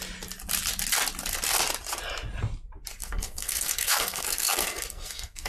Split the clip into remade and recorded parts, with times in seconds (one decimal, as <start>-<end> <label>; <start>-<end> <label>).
0.0-2.9 recorded; 2.9-5.5 remade